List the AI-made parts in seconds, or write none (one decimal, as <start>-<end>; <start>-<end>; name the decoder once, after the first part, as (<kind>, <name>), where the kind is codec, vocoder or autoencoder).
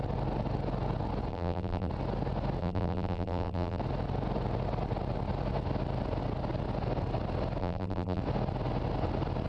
1.3-1.9 (vocoder, BigVGAN v2); 2.6-3.8; 7.6-8.2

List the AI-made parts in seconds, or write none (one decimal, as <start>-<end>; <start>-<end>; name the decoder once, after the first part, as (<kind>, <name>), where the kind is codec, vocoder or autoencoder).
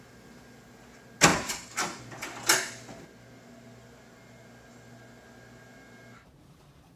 1.3-2.0 (vocoder, BigVGAN v2)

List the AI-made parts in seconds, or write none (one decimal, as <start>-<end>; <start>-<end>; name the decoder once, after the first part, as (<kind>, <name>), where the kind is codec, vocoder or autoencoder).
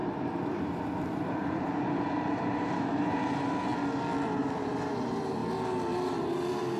0.0-3.7 (vocoder, BigVGAN v2); 4.4-5.4; 6.2-6.8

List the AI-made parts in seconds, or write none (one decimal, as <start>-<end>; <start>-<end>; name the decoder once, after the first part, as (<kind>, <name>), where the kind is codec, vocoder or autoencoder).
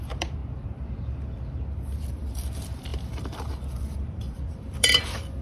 0.0-0.4 (vocoder, BigVGAN v2); 2.0-5.4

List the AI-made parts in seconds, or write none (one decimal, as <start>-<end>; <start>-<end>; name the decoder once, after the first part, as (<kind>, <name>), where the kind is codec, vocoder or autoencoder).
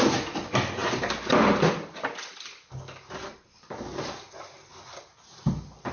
none